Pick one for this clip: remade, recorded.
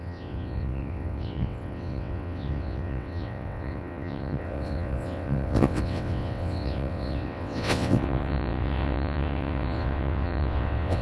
remade